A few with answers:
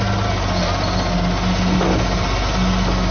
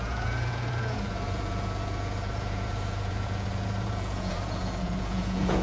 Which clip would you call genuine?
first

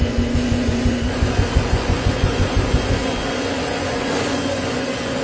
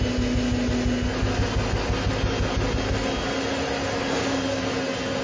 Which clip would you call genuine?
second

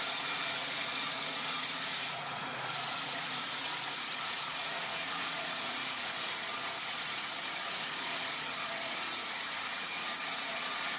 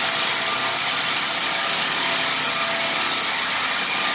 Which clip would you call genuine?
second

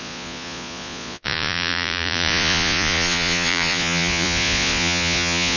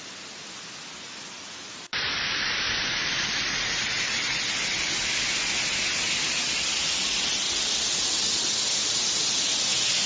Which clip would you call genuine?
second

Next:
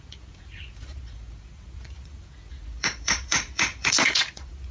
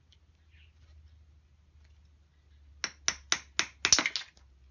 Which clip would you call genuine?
second